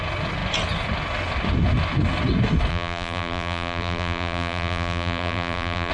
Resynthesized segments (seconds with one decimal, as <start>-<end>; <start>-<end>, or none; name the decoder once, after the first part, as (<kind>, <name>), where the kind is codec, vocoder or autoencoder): 2.7-5.9 (vocoder, BigVGAN v2)